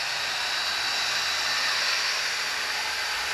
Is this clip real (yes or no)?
yes